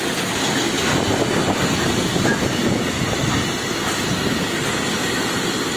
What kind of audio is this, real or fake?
real